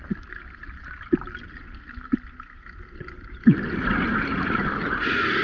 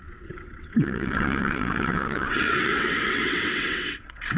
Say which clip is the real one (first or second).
first